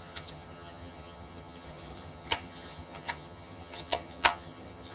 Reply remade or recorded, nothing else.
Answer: remade